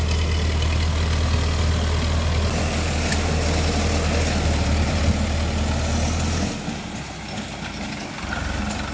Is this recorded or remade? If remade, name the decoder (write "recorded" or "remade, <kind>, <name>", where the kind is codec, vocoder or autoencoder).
recorded